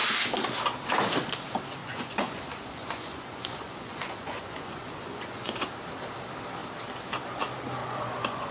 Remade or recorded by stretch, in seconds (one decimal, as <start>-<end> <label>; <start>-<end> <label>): 0.0-1.8 recorded; 1.8-5.7 remade; 5.7-7.8 recorded; 7.8-8.5 remade